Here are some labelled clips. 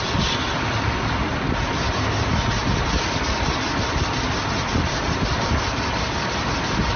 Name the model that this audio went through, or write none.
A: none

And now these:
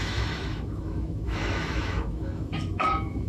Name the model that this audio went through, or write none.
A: autoencoder, DAC-VAE